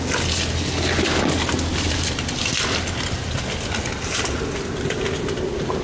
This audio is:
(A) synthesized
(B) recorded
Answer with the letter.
B